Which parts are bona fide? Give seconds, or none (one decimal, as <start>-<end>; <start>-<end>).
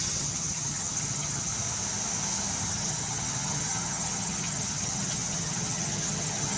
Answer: 1.5-2.7